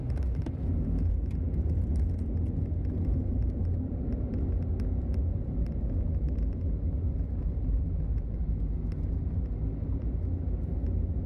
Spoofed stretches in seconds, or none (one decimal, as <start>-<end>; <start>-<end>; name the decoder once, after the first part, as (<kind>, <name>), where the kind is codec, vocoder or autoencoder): 2.8-3.5 (vocoder, BigVGAN v2); 5.2-5.7; 7.4-8.5